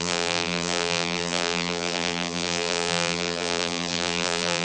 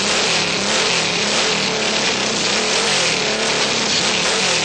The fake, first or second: first